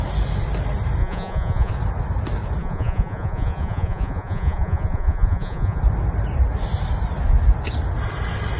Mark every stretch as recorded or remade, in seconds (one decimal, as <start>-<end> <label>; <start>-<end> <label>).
0.0-1.0 recorded; 1.0-1.7 remade; 1.7-2.6 recorded; 2.6-5.8 remade; 5.8-8.6 recorded